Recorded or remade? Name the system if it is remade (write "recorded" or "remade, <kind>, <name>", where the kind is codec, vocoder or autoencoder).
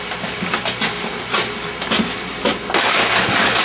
recorded